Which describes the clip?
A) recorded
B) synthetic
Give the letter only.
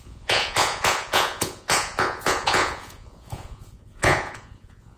B